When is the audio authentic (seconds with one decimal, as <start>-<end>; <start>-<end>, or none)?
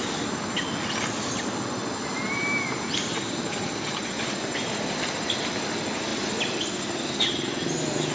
0.0-6.1; 6.6-8.1